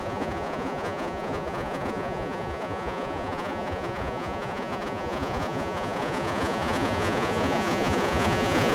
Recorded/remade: remade